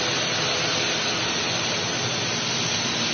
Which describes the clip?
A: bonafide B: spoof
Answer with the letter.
A